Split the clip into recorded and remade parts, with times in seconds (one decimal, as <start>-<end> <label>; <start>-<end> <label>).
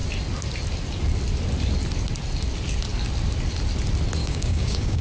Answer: 0.0-4.2 recorded; 4.2-5.0 remade